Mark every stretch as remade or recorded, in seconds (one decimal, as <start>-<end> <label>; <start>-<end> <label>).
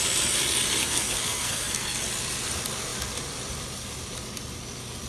0.0-0.8 recorded; 0.8-2.0 remade; 2.0-5.1 recorded